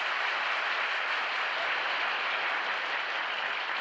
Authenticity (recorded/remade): remade